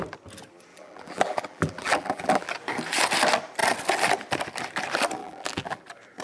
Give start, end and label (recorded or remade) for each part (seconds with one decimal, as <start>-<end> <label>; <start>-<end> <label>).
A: 0.0-0.7 recorded; 0.7-2.5 remade; 2.5-5.2 recorded; 5.2-5.8 remade; 5.8-6.2 recorded